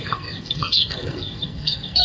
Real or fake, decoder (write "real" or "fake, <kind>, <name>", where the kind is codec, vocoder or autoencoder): fake, codec, SNAC